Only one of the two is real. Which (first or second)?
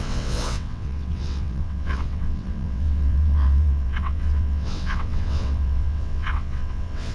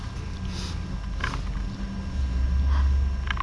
second